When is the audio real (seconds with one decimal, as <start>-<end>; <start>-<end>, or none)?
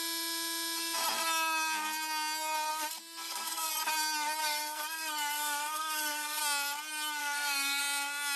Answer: 0.0-2.7; 3.7-4.4; 6.4-7.2; 7.8-8.4